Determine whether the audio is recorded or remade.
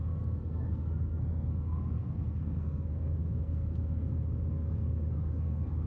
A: remade